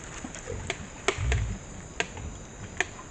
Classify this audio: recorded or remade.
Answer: recorded